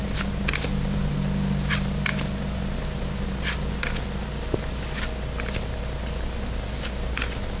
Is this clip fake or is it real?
real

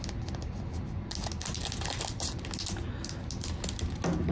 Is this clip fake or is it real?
real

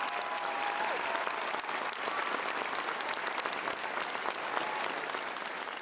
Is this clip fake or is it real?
real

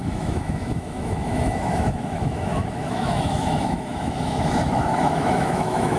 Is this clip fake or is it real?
fake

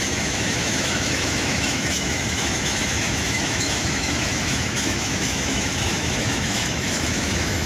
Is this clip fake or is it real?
fake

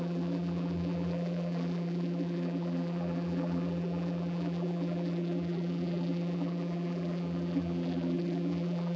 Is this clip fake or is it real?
fake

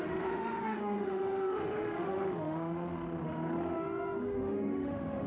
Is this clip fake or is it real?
fake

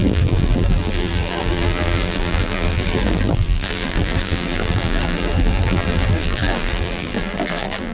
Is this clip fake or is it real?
fake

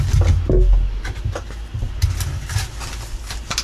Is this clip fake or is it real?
real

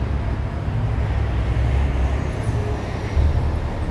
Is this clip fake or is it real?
real